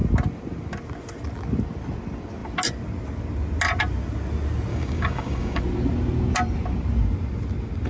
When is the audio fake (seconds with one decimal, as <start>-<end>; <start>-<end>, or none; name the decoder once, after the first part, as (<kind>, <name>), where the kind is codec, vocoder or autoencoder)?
4.7-5.6 (codec, DAC)

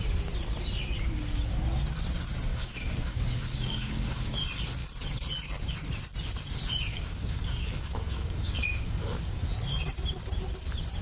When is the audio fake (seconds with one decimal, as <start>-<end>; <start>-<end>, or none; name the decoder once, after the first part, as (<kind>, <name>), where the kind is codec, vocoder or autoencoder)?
2.5-4.3 (codec, DAC); 6.9-9.4

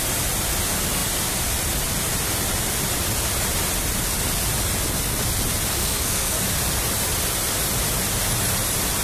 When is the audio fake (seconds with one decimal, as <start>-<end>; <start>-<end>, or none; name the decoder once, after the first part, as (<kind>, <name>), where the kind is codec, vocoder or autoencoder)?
5.8-6.4 (codec, SNAC)

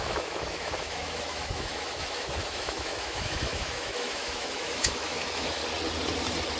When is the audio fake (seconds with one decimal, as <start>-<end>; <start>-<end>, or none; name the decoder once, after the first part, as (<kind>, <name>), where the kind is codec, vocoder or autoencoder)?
0.0-5.6 (autoencoder, DAC-VAE)